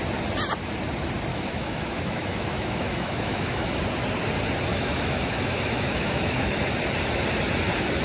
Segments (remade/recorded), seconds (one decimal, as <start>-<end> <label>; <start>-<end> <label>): 0.0-1.3 recorded; 1.3-3.8 remade; 3.8-4.7 recorded; 4.7-6.6 remade; 6.6-8.0 recorded